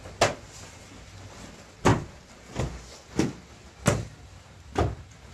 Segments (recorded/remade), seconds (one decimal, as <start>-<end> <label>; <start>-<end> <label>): 0.0-5.3 recorded